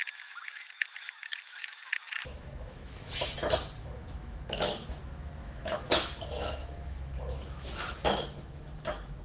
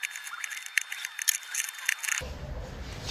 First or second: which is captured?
second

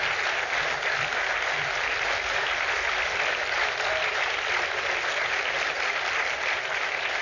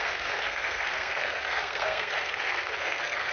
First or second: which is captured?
first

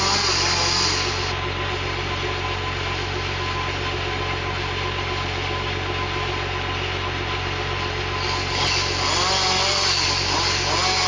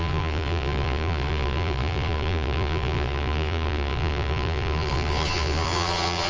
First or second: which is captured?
first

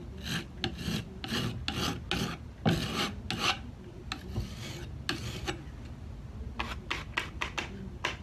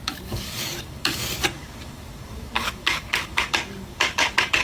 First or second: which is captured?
first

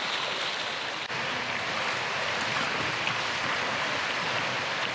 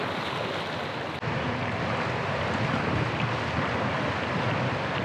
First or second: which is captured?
second